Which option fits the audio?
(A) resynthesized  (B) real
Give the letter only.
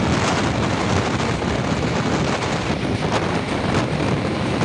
B